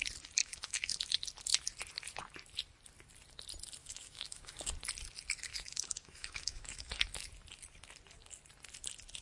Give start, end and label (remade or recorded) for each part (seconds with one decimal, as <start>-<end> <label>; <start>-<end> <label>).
0.0-0.4 recorded; 0.4-1.0 remade; 1.0-3.8 recorded; 3.8-4.7 remade; 4.7-5.5 recorded; 5.5-6.9 remade; 6.9-9.2 recorded